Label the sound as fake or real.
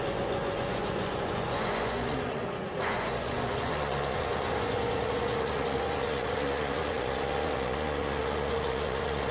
fake